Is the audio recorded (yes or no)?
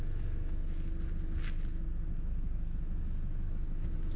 yes